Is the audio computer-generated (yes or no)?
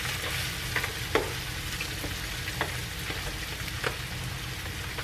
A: no